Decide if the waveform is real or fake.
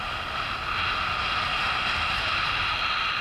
real